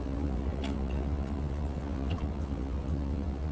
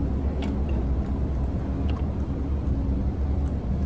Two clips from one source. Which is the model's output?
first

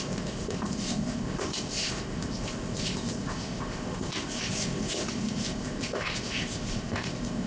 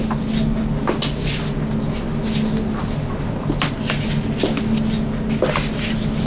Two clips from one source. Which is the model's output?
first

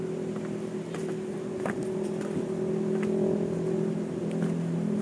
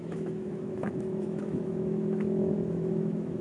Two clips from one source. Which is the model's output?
second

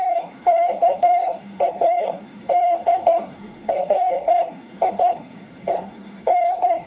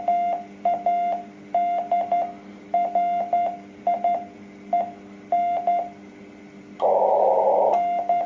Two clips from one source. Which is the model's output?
first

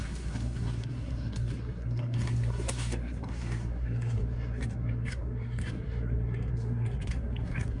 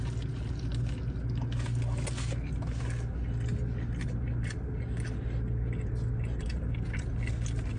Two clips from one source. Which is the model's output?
first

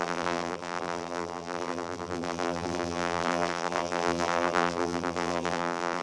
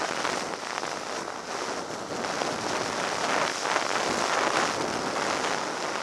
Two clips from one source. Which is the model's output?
first